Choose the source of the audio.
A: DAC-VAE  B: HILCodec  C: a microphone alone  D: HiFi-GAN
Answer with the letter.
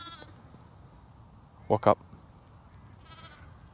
C